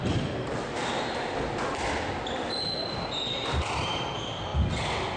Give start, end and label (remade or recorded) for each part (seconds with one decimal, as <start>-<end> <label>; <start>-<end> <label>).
0.0-5.2 recorded